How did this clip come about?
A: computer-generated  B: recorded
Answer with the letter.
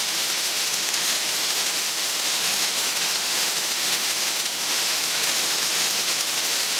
A